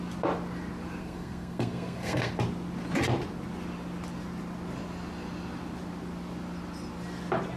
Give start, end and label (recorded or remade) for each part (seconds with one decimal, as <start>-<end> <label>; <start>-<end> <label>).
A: 0.0-1.0 recorded; 1.0-2.3 remade; 2.3-7.6 recorded